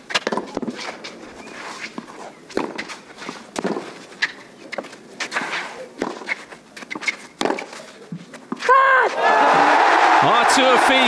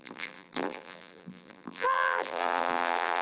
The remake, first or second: second